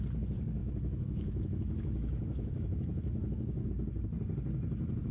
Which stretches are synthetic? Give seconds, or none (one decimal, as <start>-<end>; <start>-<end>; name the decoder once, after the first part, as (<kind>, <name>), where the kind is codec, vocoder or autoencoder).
0.6-3.7 (autoencoder, DAC-VAE)